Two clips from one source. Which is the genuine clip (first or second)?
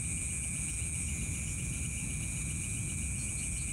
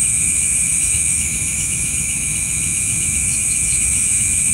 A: first